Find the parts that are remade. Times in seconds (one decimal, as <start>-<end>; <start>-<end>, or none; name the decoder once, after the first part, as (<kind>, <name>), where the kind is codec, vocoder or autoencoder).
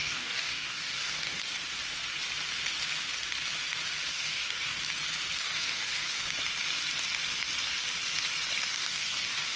0.0-1.4 (codec, DAC); 4.1-4.8; 5.4-6.2; 8.7-9.6